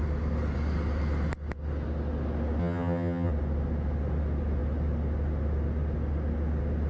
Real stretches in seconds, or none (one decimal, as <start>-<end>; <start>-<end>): 0.0-2.6; 3.3-6.9